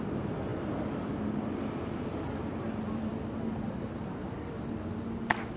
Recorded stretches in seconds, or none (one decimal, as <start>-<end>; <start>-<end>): 0.5-2.0; 3.1-5.6